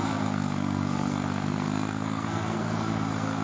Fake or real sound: fake